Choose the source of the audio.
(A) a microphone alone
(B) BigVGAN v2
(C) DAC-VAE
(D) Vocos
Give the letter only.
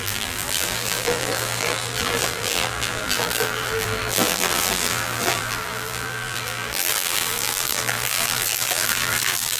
B